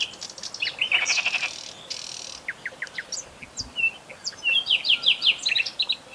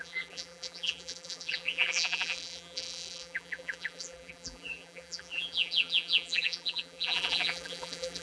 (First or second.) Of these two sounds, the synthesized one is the second